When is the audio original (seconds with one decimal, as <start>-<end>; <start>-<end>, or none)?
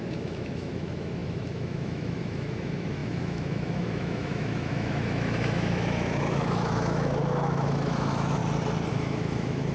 8.4-8.9